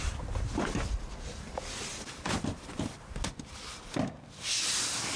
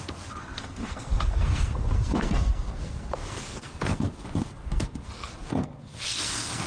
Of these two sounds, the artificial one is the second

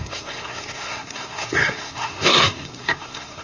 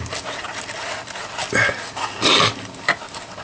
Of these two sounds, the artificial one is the first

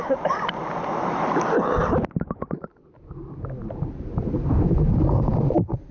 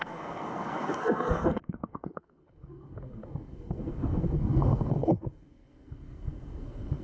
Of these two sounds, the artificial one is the second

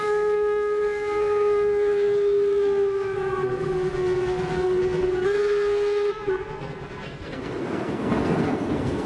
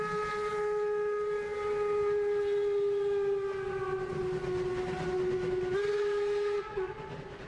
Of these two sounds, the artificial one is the first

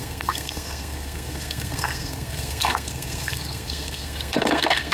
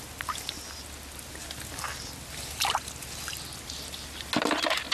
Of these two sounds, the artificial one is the first